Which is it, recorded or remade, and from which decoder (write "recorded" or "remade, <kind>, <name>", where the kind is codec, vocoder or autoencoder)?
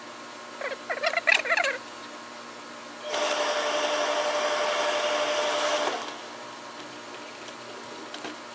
recorded